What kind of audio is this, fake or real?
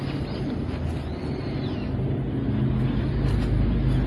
real